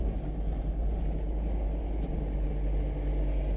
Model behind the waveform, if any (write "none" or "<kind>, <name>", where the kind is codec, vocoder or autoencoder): none